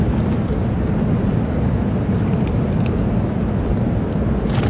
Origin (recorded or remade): recorded